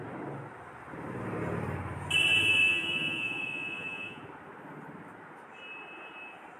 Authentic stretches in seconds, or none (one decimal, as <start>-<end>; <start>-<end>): 0.0-2.3; 4.2-6.6